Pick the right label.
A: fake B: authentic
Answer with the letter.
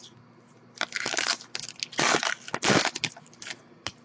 B